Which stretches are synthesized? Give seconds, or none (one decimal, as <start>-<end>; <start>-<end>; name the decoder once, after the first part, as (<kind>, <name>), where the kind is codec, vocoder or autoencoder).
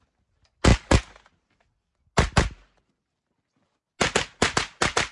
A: none